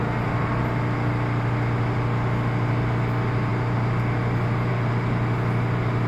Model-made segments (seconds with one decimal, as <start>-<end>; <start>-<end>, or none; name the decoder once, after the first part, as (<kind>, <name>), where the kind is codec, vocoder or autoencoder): none